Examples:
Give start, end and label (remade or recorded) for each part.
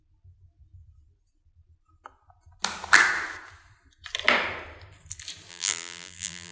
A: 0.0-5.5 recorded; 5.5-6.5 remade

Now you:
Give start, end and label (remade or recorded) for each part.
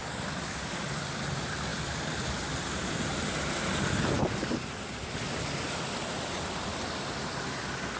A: 0.0-0.8 remade; 0.8-8.0 recorded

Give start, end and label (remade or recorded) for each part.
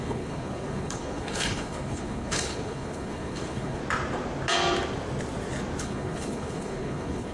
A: 0.0-3.8 remade; 3.8-5.8 recorded; 5.8-7.3 remade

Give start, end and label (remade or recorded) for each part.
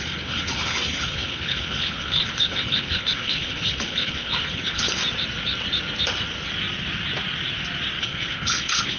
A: 0.0-5.0 remade; 5.0-8.0 recorded; 8.0-9.0 remade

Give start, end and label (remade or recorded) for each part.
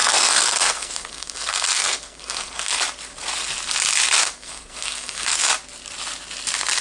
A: 0.0-2.8 remade; 2.8-4.2 recorded; 4.2-5.5 remade; 5.5-6.8 recorded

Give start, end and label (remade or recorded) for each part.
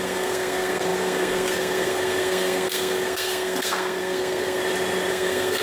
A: 0.0-4.6 remade; 4.6-5.1 recorded; 5.1-5.6 remade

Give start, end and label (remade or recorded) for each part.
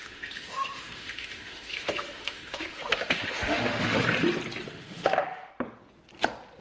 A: 0.0-4.0 remade; 4.0-4.7 recorded; 4.7-5.5 remade; 5.5-6.6 recorded